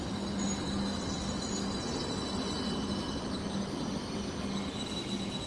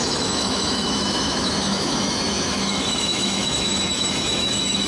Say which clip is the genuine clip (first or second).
first